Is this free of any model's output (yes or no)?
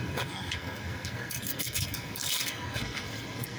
no